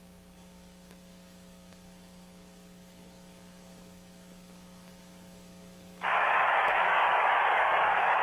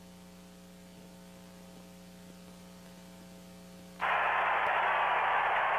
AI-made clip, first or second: first